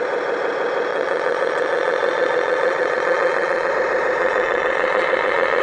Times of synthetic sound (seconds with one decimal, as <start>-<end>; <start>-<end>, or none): 0.9-3.7; 4.2-5.6